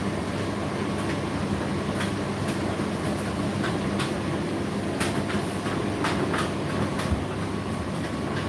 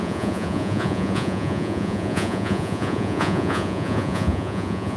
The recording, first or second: first